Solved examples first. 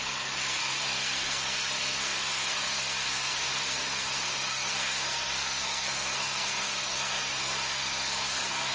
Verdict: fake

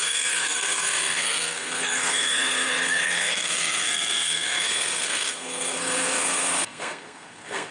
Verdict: fake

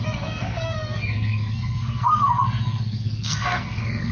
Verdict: fake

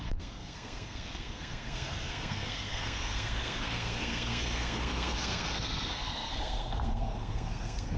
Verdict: fake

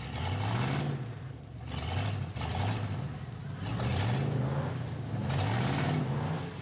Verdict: real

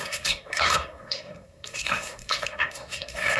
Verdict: fake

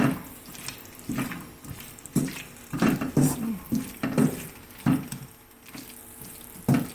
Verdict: real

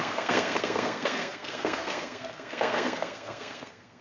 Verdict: fake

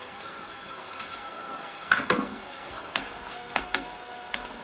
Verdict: fake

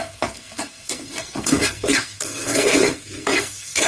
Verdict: fake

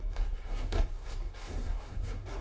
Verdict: fake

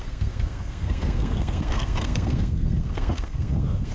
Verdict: fake